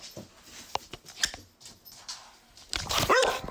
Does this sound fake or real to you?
real